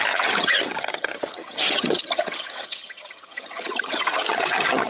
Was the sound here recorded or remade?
remade